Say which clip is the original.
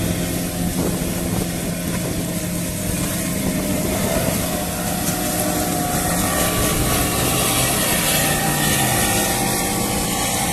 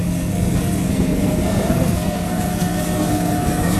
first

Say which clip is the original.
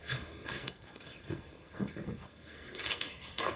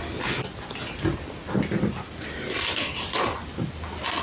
second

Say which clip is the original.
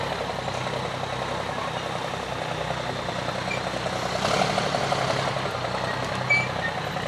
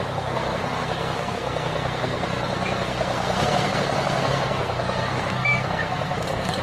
first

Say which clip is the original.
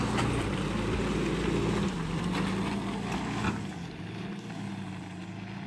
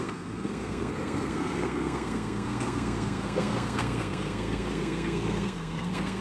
first